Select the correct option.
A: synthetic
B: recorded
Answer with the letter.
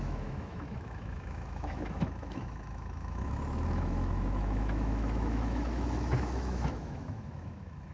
A